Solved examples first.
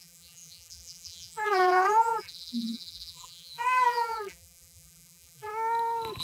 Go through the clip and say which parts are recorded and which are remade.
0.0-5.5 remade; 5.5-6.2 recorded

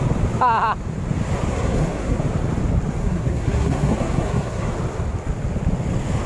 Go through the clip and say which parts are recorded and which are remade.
0.0-1.5 recorded; 1.5-2.2 remade; 2.2-3.0 recorded; 3.0-4.7 remade; 4.7-6.3 recorded

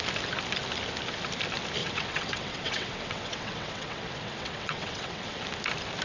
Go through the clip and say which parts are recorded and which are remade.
0.0-1.8 recorded; 1.8-5.4 remade; 5.4-6.0 recorded

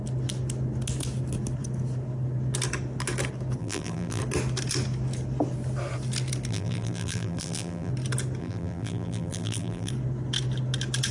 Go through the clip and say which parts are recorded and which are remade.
0.0-3.6 recorded; 3.6-4.2 remade; 4.2-6.5 recorded; 6.5-7.9 remade; 7.9-8.4 recorded; 8.4-9.9 remade; 9.9-11.1 recorded

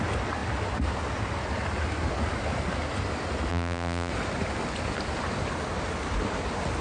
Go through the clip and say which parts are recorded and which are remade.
0.0-3.5 recorded; 3.5-4.1 remade; 4.1-6.8 recorded

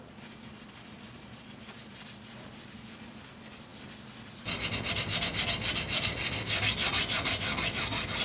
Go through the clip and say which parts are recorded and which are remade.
0.0-8.2 recorded

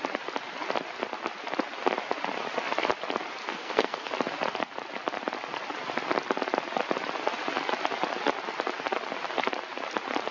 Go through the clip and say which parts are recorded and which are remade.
0.0-3.4 recorded; 3.4-4.1 remade; 4.1-10.3 recorded

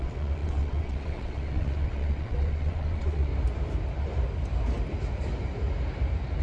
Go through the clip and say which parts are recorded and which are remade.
0.0-3.3 remade; 3.3-6.4 recorded